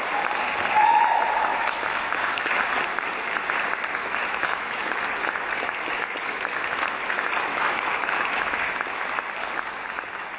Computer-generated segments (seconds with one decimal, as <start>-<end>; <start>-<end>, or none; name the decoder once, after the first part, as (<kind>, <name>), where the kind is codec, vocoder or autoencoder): 1.5-2.6 (autoencoder, DAC-VAE); 4.0-9.0